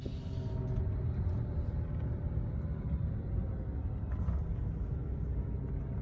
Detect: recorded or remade recorded